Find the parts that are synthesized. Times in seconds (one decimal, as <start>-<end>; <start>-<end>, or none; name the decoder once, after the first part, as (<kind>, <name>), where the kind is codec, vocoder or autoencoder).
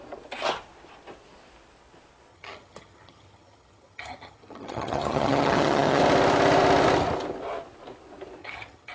2.3-6.0 (vocoder, HiFi-GAN); 8.4-8.9